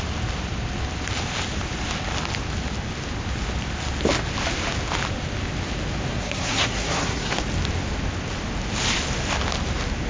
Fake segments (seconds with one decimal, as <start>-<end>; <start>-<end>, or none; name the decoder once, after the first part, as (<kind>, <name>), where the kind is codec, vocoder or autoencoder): 6.1-7.4 (codec, SNAC)